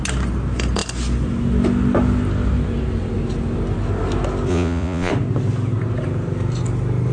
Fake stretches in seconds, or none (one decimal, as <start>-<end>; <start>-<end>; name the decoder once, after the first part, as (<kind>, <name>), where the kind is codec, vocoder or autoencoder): 4.5-5.1 (vocoder, Vocos)